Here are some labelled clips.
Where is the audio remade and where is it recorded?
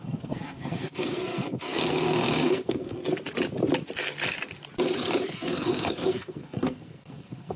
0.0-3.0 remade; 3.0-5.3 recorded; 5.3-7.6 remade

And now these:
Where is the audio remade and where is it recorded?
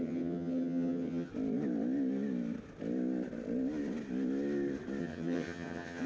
0.0-1.3 remade; 1.3-5.0 recorded; 5.0-6.1 remade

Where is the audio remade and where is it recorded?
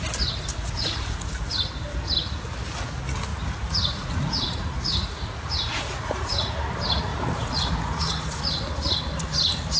0.0-0.5 recorded; 0.5-1.5 remade; 1.5-3.3 recorded; 3.3-6.5 remade; 6.5-7.1 recorded; 7.1-8.4 remade; 8.4-9.8 recorded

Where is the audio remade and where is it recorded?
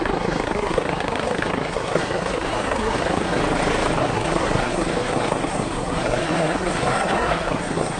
0.0-3.4 remade; 3.4-4.0 recorded; 4.0-8.0 remade